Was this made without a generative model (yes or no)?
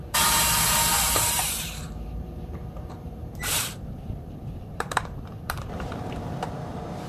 no